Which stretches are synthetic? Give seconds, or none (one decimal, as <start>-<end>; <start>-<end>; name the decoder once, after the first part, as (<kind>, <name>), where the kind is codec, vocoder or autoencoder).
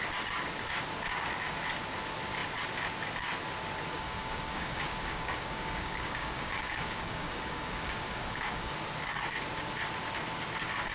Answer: 4.0-8.7 (codec, DAC)